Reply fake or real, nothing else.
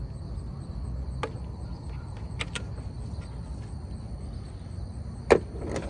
real